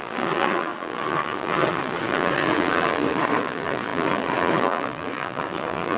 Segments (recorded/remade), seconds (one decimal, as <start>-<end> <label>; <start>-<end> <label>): 0.0-6.0 remade